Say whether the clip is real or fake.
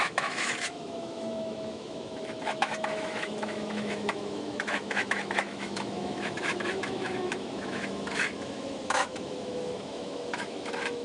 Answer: fake